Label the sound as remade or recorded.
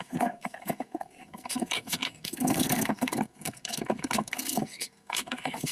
remade